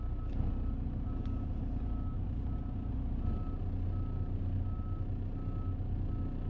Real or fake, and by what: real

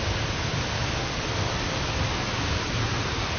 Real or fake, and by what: fake, vocoder, BigVGAN v2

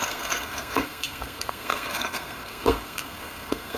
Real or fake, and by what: fake, codec, SNAC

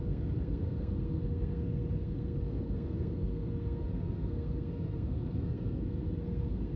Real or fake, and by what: fake, codec, SNAC